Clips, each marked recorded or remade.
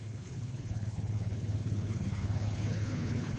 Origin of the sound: remade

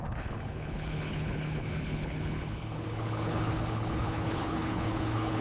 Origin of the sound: remade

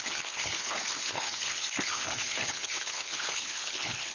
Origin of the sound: remade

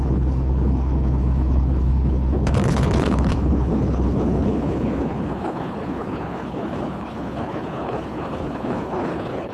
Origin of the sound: remade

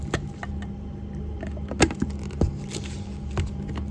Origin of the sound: recorded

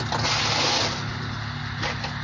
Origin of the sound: recorded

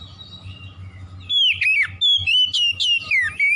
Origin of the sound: recorded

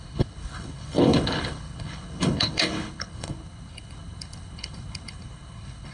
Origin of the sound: remade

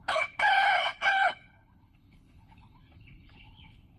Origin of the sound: remade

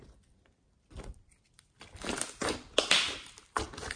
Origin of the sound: recorded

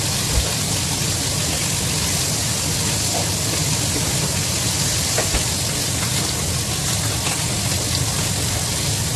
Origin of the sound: recorded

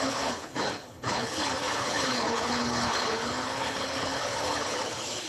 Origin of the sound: remade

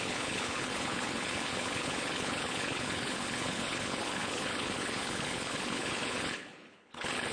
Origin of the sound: remade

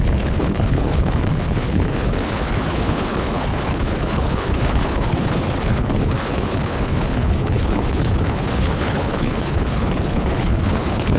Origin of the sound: remade